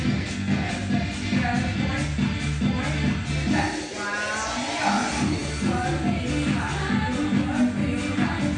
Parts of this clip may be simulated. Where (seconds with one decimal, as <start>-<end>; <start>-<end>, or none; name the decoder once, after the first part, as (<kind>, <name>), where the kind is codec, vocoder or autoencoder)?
0.0-0.7 (codec, SNAC)